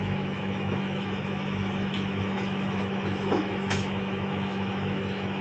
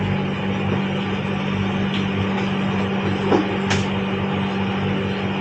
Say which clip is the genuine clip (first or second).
second